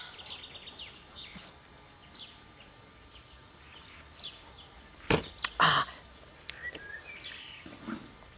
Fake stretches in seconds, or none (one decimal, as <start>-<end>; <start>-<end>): none